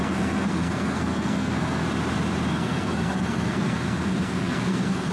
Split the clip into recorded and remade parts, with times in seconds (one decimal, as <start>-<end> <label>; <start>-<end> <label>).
0.0-1.8 remade; 1.8-2.5 recorded; 2.5-5.1 remade